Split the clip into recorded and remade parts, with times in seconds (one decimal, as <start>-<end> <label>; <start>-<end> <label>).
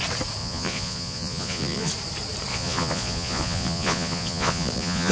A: 0.0-0.4 recorded; 0.4-1.9 remade; 1.9-2.5 recorded; 2.5-5.1 remade